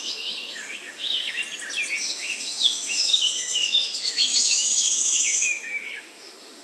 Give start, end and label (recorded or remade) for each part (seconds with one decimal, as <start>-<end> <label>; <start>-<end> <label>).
0.0-1.4 remade; 1.4-2.0 recorded; 2.0-6.6 remade